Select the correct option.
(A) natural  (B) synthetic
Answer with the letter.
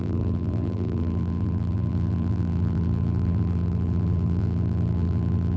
B